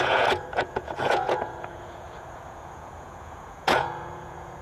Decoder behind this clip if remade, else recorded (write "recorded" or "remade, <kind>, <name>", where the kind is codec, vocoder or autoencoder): remade, vocoder, Vocos